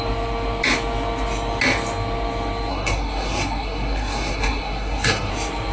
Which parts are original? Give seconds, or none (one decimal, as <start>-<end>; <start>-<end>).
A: 0.0-2.7; 5.3-5.7